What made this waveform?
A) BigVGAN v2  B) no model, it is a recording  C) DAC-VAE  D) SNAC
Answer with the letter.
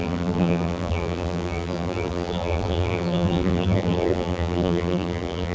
A